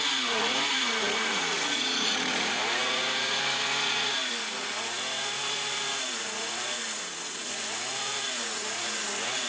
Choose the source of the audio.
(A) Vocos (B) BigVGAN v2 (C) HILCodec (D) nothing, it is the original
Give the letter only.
A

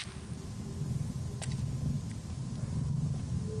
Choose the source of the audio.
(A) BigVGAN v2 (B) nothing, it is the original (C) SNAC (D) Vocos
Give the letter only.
B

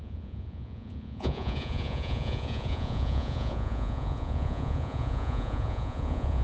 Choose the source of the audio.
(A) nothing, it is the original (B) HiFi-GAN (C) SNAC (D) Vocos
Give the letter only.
D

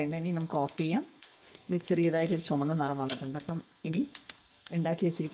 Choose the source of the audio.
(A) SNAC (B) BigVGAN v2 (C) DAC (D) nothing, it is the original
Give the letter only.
A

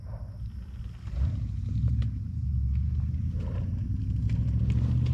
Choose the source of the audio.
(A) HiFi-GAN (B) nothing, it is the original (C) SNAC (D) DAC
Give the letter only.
B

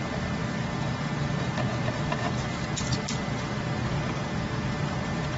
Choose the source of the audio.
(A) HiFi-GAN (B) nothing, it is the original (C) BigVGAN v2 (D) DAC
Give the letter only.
B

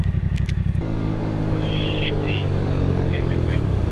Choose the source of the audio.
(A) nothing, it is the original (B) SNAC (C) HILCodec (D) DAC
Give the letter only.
D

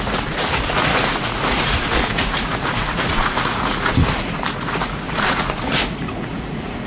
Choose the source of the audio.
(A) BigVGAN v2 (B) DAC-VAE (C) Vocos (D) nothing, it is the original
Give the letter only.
C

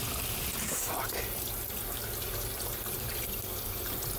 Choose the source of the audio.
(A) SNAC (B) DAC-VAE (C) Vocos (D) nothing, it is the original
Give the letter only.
D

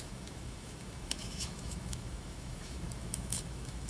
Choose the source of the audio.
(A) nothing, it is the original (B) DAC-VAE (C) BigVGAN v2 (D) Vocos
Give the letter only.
B